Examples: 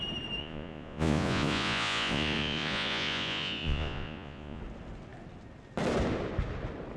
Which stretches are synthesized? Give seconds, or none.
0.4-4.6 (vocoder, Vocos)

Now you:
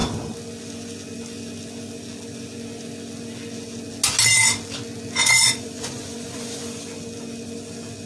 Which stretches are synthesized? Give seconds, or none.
5.2-6.8 (vocoder, Vocos)

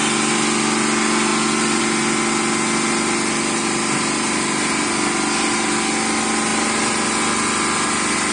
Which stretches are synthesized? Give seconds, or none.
none

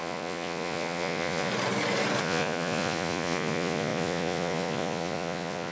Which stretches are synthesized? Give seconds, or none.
0.0-1.5 (vocoder, Vocos); 2.2-5.7

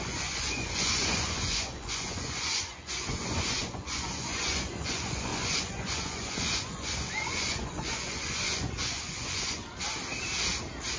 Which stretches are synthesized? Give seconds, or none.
0.0-9.6 (vocoder, Vocos)

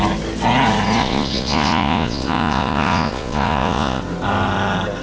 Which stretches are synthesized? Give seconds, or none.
1.0-4.0 (vocoder, Vocos)

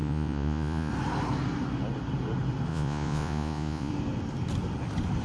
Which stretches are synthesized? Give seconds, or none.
0.0-0.9 (vocoder, Vocos); 2.7-3.9